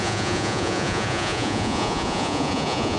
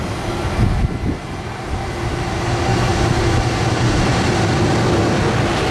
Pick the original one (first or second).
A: second